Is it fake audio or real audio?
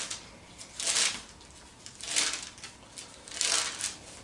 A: real